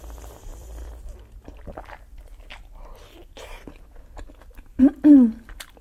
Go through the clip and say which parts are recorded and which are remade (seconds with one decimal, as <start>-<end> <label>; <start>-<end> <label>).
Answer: 0.0-0.5 recorded; 0.5-2.5 remade; 2.5-5.8 recorded